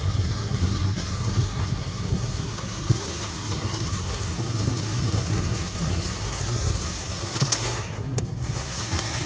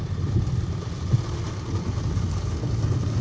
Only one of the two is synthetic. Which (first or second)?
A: first